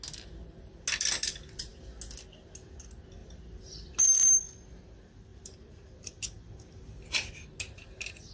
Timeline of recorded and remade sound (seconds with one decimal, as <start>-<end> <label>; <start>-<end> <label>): 0.0-5.3 recorded; 5.3-7.3 remade; 7.3-8.3 recorded